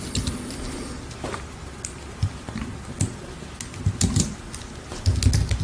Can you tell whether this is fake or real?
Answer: real